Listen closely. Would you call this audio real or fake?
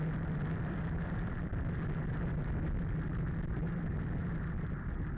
real